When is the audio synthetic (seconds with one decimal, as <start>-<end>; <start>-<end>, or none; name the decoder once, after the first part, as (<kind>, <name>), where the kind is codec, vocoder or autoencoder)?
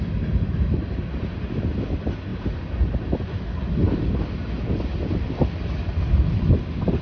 none